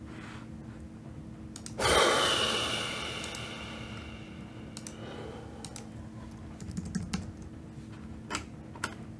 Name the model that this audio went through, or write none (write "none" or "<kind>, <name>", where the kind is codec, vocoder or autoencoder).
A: none